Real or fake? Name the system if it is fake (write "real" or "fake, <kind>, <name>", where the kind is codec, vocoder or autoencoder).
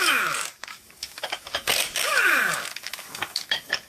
fake, codec, DAC